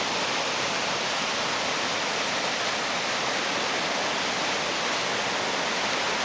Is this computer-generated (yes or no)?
no